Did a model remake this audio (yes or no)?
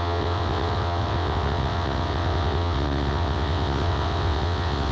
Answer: yes